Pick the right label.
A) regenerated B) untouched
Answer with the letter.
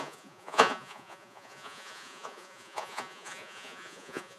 A